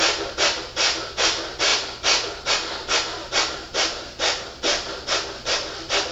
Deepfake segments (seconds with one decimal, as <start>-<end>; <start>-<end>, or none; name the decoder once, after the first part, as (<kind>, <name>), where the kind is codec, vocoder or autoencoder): 0.0-1.7 (vocoder, BigVGAN v2); 5.4-6.1